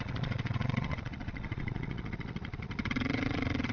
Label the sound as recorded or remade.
remade